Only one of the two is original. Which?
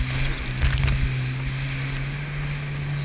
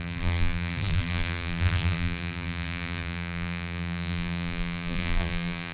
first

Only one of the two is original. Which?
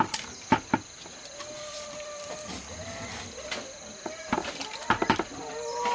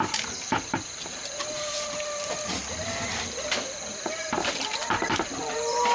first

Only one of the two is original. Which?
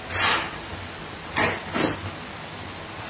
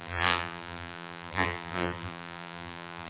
first